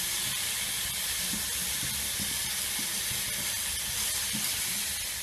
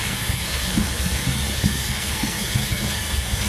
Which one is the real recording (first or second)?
first